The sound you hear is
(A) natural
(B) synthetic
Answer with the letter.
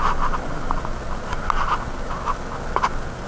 A